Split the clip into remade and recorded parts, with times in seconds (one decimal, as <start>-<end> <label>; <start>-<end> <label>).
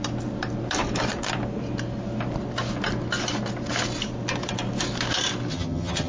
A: 0.0-5.5 recorded; 5.5-6.1 remade